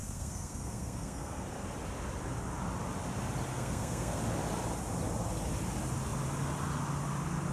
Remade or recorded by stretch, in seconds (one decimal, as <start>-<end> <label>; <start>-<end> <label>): 0.0-1.5 remade; 1.5-3.5 recorded; 3.5-4.2 remade; 4.2-7.5 recorded